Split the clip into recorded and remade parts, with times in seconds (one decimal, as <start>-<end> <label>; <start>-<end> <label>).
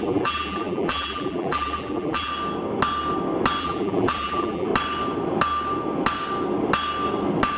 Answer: 0.0-2.3 remade; 2.3-3.6 recorded; 3.6-4.7 remade; 4.7-7.6 recorded